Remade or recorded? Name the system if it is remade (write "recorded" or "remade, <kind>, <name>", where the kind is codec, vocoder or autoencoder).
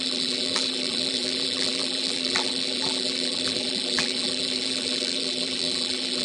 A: remade, vocoder, BigVGAN v2